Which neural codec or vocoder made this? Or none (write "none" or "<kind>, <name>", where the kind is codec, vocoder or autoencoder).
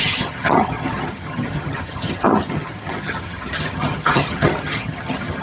vocoder, HiFi-GAN